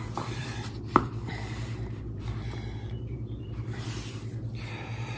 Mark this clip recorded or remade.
remade